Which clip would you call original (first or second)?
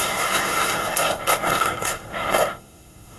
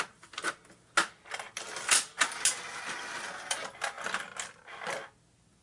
second